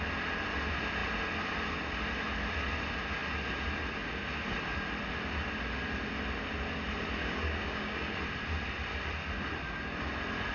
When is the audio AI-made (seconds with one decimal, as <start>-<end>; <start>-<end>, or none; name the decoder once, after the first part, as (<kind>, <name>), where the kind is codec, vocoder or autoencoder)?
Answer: 7.2-8.2 (codec, DAC)